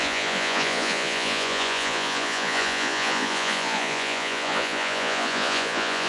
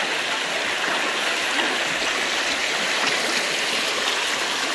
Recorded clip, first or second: second